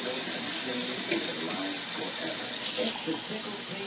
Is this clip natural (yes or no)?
yes